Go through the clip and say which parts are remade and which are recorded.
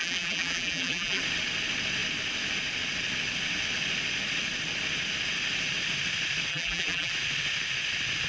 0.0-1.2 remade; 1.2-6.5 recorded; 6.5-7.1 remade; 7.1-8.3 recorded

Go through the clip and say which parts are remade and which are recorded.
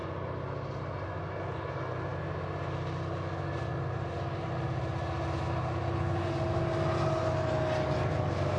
0.0-8.6 recorded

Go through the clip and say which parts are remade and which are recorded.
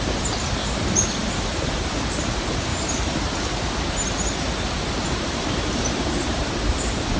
0.0-2.7 recorded; 2.7-3.5 remade; 3.5-5.0 recorded; 5.0-6.4 remade; 6.4-7.2 recorded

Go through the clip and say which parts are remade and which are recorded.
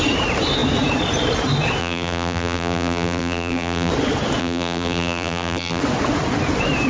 0.0-1.8 recorded; 1.8-3.9 remade; 3.9-4.4 recorded; 4.4-5.8 remade; 5.8-6.9 recorded